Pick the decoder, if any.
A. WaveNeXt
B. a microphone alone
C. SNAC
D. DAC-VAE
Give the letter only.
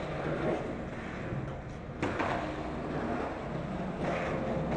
B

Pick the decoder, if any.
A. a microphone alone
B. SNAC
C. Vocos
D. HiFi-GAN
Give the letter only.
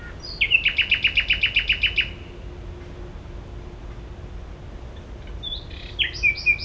A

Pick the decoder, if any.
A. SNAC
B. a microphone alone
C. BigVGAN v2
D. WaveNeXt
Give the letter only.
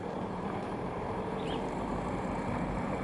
C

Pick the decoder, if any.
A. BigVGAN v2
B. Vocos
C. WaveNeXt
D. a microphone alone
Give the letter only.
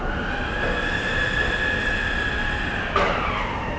D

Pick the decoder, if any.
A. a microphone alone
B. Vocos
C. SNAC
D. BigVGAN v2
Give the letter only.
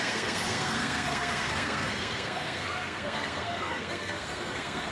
C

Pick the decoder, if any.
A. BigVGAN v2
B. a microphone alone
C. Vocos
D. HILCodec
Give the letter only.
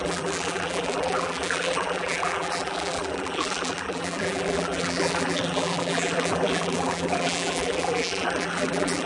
A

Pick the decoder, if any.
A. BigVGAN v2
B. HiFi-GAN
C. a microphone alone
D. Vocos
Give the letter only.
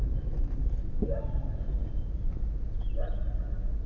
C